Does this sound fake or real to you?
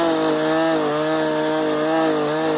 real